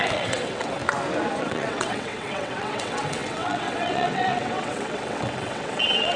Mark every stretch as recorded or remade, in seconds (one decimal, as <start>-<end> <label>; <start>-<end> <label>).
0.0-0.8 remade; 0.8-1.4 recorded; 1.4-6.2 remade